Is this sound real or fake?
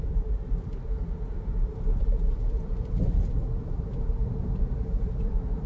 fake